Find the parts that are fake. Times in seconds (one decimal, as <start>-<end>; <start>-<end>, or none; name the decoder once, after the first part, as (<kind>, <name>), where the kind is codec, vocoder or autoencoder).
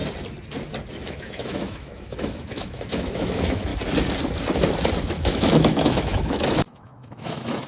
1.0-3.7 (autoencoder, DAC-VAE); 5.1-7.7